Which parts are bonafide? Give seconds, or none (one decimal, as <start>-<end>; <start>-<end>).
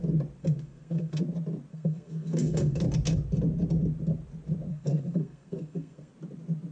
0.0-0.4; 1.2-1.7; 2.8-4.7; 6.1-6.7